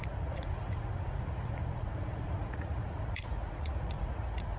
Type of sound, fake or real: fake